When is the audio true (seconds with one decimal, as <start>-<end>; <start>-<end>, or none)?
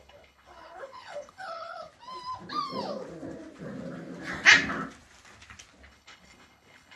1.9-5.9